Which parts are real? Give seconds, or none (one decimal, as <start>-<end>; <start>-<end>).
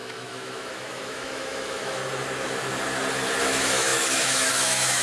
2.0-3.4